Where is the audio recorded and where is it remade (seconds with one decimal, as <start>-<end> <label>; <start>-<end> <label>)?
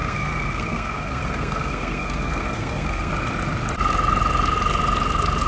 0.0-3.1 remade; 3.1-5.5 recorded